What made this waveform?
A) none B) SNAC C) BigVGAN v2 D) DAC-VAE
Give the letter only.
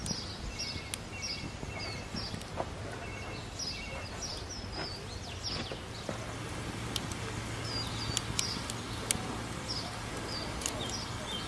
A